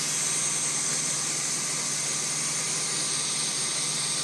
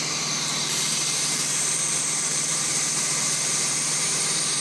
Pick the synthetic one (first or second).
second